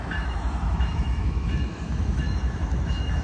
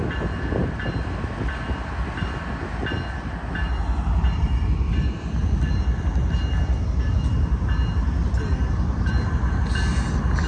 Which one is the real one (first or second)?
second